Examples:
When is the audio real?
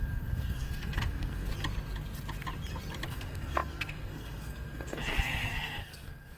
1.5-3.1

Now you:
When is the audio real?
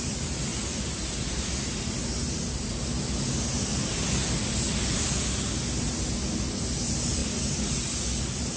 0.0-8.6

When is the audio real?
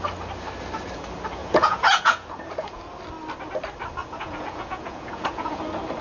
0.0-1.4; 2.8-4.0; 5.6-6.0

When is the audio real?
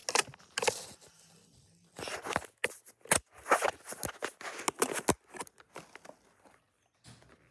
0.0-7.5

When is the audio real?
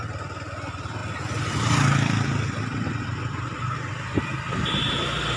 0.0-5.4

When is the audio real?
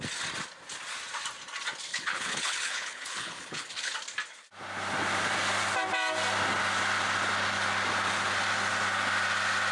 0.0-1.9; 3.9-9.7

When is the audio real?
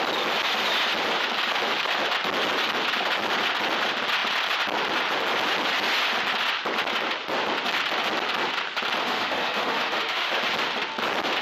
0.0-9.0; 10.3-11.4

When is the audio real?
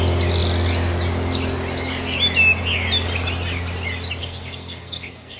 0.0-4.2